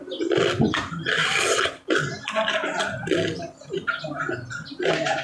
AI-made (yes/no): yes